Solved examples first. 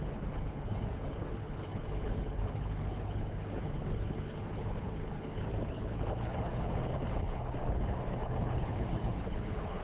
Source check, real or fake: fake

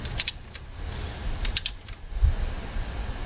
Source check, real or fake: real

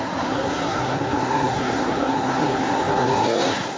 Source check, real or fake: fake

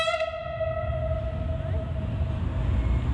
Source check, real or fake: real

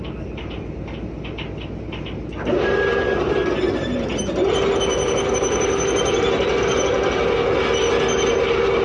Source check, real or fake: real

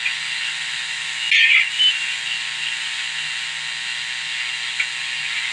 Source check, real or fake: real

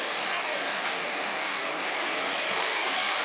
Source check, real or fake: fake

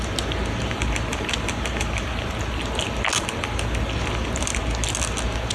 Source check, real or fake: real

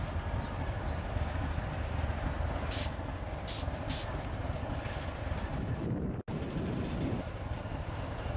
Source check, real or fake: real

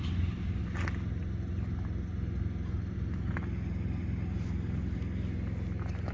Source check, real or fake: real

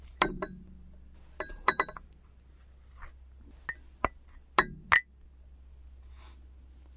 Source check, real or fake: real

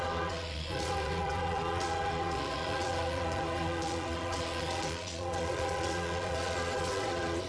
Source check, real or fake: fake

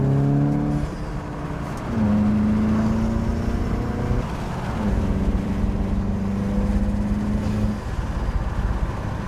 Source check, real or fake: real